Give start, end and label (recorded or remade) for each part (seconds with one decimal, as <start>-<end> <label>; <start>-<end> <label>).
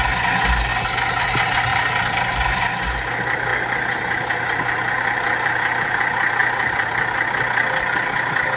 0.0-1.7 recorded; 1.7-2.6 remade; 2.6-6.4 recorded; 6.4-6.9 remade; 6.9-8.6 recorded